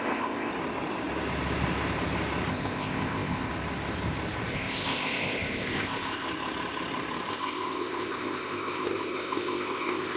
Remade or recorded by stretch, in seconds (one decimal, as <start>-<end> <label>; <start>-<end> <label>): 0.0-0.5 remade; 0.5-2.5 recorded; 2.5-3.5 remade; 3.5-4.5 recorded; 4.5-6.3 remade; 6.3-7.3 recorded; 7.3-10.2 remade